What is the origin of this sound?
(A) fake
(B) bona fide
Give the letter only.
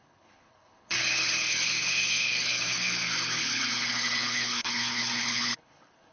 A